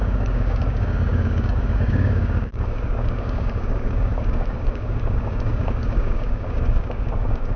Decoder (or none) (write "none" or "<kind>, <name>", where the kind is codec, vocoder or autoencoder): codec, DAC